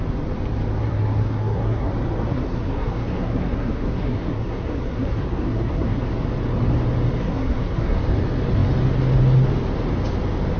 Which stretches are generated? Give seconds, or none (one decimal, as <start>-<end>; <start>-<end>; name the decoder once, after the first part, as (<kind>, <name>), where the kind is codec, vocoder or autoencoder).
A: 0.8-1.9 (codec, SNAC); 2.3-6.0; 7.2-8.0